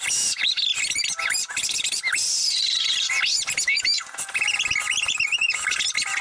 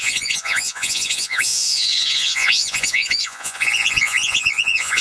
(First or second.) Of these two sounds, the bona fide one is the first